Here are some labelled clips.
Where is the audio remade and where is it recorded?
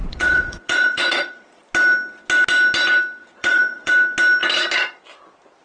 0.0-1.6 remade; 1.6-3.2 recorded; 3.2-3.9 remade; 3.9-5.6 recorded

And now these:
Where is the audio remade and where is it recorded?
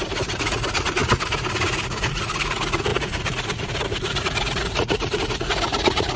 0.0-6.2 remade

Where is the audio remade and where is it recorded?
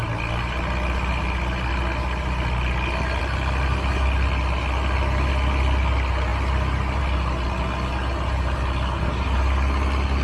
0.0-10.2 recorded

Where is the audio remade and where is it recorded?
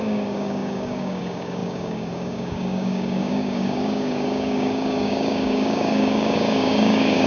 0.0-7.3 remade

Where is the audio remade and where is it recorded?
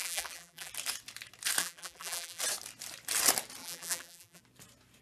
0.0-0.7 remade; 0.7-1.6 recorded; 1.6-2.4 remade; 2.4-3.6 recorded; 3.6-4.4 remade; 4.4-5.0 recorded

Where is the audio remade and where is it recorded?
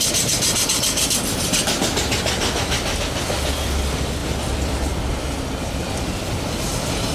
0.0-7.1 recorded